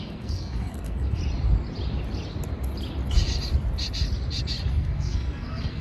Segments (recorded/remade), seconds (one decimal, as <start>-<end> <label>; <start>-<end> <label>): 0.0-1.2 remade; 1.2-4.7 recorded; 4.7-5.8 remade